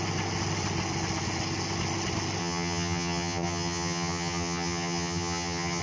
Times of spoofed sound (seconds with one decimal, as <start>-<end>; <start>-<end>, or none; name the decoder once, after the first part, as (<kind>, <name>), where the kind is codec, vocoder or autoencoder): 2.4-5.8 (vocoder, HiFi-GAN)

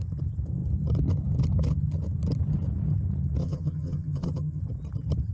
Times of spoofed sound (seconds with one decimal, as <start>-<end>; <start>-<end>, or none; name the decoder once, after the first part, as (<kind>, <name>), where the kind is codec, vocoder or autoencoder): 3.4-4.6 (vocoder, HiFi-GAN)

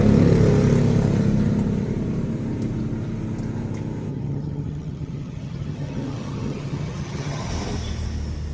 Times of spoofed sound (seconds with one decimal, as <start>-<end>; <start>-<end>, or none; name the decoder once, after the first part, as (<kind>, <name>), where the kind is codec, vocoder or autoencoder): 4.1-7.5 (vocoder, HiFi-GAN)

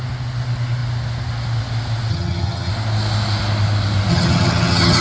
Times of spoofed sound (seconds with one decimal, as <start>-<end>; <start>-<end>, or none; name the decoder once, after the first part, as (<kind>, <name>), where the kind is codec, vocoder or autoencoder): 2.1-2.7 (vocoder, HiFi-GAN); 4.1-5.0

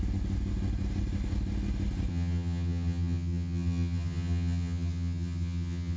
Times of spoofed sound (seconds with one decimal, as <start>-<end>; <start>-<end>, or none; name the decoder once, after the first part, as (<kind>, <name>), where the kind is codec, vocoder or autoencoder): 2.1-6.0 (vocoder, HiFi-GAN)

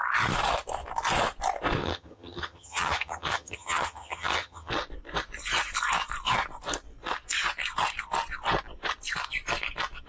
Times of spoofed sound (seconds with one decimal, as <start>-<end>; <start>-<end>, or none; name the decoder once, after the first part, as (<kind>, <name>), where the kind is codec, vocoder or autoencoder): 1.8-4.7 (vocoder, HiFi-GAN)

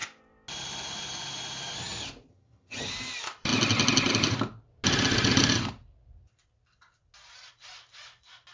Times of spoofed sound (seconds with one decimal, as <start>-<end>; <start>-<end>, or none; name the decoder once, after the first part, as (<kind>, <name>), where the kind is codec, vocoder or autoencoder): 2.3-2.9 (vocoder, HiFi-GAN)

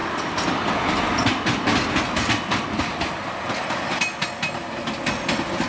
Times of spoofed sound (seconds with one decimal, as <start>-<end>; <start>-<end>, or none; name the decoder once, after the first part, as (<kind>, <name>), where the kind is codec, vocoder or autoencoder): none